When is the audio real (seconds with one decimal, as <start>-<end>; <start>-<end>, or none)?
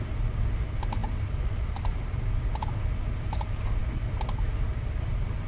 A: 0.0-1.0; 2.6-5.5